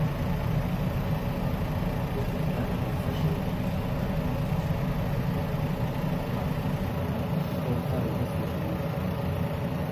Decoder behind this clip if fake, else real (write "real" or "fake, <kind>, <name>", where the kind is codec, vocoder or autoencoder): real